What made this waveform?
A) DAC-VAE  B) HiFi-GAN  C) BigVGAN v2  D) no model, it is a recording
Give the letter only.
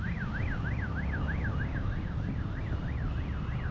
D